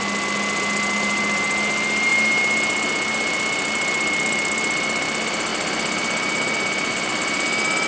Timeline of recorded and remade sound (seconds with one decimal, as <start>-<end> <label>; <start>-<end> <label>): 0.0-7.9 recorded